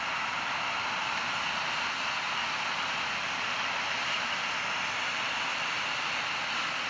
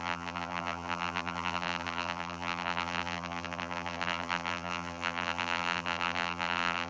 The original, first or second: first